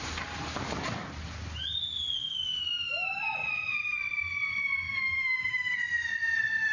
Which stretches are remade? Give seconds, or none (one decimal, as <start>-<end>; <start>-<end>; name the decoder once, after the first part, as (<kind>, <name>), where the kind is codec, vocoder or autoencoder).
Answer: 2.2-3.2 (autoencoder, DAC-VAE); 5.0-5.7